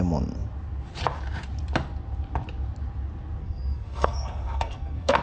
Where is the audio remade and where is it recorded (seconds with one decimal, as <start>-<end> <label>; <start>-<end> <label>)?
0.0-3.4 recorded; 3.4-5.2 remade